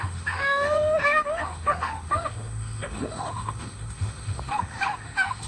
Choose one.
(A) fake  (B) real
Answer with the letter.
A